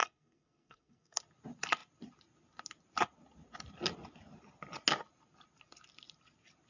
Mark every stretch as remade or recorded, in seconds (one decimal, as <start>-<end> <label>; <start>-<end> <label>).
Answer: 0.0-1.2 remade; 1.2-6.7 recorded